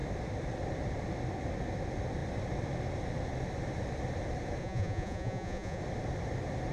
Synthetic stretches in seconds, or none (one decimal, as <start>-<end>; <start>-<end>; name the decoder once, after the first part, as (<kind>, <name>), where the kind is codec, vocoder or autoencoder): 4.6-5.8 (vocoder, Vocos)